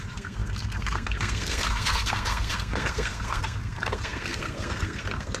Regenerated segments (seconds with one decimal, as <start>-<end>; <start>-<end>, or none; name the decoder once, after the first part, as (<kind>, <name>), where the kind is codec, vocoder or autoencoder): 0.0-5.4 (codec, SNAC)